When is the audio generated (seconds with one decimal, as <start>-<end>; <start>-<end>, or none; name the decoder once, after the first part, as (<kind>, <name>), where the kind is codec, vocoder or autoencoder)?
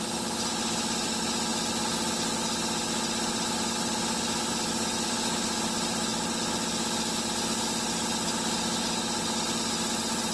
0.0-1.5 (vocoder, BigVGAN v2); 3.7-6.1; 9.6-10.3